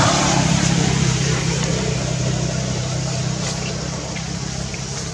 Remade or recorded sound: remade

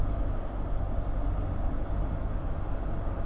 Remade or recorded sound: recorded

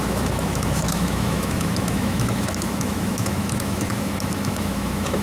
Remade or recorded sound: remade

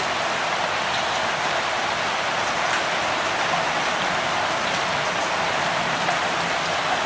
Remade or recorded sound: recorded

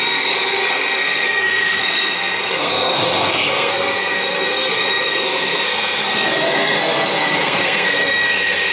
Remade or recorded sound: remade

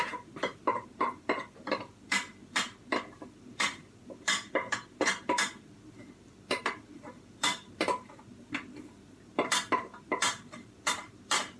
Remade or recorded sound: remade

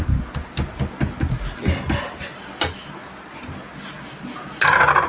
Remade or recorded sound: recorded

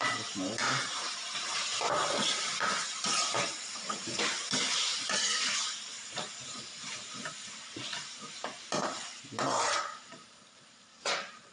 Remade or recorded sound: remade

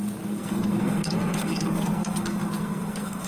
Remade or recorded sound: remade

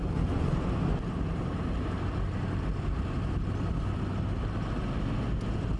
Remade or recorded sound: recorded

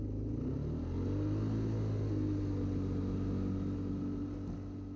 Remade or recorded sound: recorded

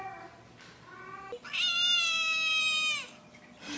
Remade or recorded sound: recorded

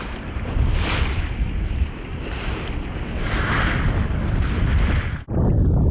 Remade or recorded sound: recorded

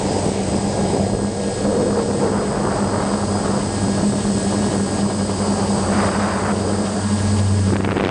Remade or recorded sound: recorded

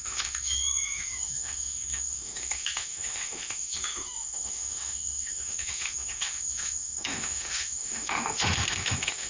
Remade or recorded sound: remade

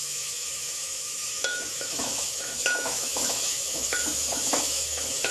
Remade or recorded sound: remade